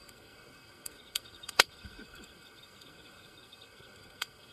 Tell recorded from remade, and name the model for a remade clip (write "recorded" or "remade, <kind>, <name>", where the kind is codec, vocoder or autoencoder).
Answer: remade, codec, SNAC